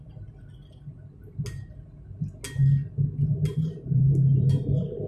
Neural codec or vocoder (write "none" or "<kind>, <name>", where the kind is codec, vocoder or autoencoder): none